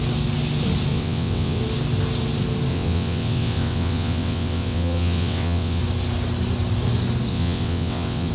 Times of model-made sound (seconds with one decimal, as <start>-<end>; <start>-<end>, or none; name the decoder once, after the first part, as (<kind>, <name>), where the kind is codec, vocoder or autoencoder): 0.9-1.6 (vocoder, WaveNeXt); 2.7-5.8; 7.3-8.3